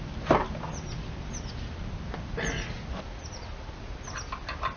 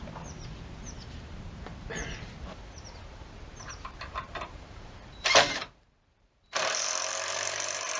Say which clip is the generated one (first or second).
second